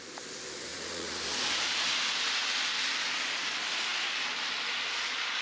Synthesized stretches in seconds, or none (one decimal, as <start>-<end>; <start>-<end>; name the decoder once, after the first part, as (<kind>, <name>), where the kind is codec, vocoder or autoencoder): 0.7-1.2 (vocoder, Vocos)